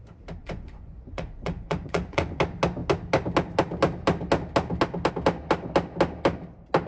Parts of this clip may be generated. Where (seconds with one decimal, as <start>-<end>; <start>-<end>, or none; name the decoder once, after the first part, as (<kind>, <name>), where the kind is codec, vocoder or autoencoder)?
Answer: 0.4-2.4 (vocoder, Vocos)